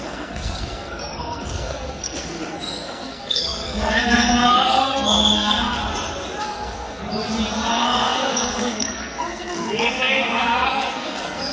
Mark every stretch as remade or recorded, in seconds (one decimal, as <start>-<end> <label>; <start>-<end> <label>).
0.0-5.8 remade; 5.8-6.4 recorded; 6.4-7.0 remade; 7.0-7.7 recorded; 7.7-11.5 remade